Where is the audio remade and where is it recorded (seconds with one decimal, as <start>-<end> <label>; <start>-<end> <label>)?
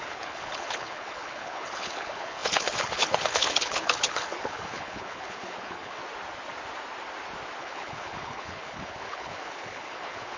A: 0.0-6.0 remade; 6.0-7.6 recorded; 7.6-10.4 remade